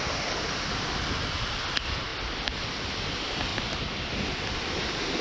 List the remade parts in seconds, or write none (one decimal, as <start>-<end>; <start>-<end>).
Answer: none